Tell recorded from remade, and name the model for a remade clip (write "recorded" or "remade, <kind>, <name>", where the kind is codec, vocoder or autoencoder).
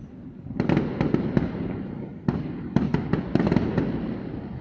recorded